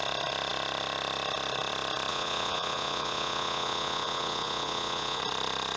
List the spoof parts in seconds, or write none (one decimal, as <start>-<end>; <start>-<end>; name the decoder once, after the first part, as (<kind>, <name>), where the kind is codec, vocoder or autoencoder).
2.1-5.2 (vocoder, Vocos)